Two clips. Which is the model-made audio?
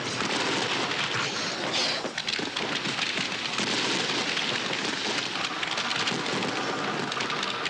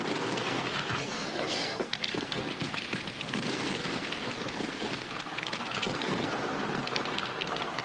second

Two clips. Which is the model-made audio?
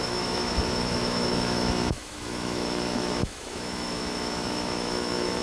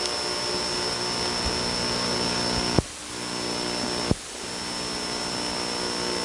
first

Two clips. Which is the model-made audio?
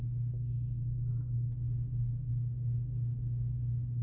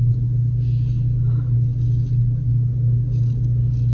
first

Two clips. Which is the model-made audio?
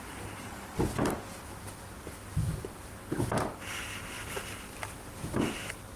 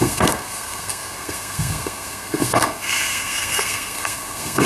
second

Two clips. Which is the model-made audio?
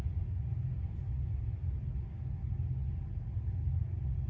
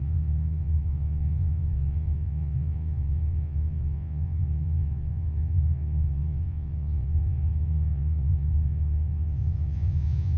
second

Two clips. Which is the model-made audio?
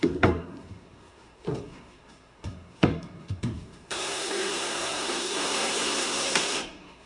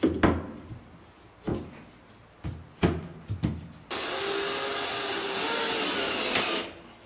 first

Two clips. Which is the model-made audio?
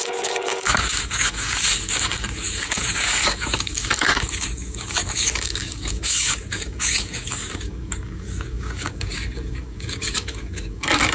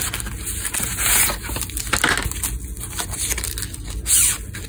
first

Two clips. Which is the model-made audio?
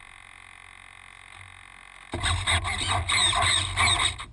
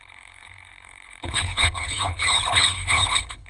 second